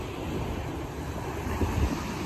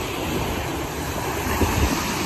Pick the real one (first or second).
first